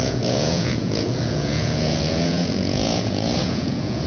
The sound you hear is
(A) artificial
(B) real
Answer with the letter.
A